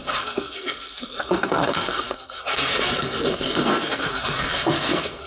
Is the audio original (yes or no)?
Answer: no